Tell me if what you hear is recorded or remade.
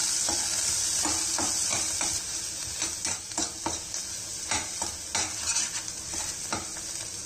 recorded